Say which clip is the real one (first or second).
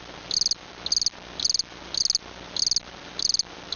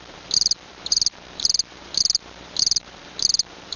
first